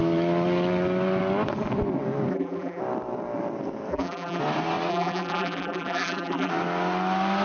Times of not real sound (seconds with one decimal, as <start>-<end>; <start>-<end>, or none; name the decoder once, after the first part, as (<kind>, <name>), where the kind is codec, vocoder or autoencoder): 2.3-2.8 (vocoder, BigVGAN v2); 3.9-4.4; 4.9-6.5